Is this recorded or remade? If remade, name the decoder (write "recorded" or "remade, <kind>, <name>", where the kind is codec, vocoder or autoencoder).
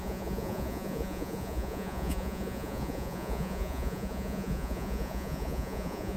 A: remade, vocoder, Vocos